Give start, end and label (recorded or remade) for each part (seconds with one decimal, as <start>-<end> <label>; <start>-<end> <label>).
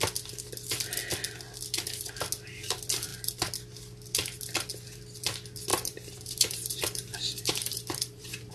0.0-5.7 recorded; 5.7-8.5 remade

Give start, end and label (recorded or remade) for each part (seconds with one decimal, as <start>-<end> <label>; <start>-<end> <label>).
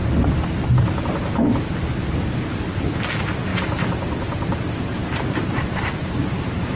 0.0-3.5 recorded; 3.5-6.8 remade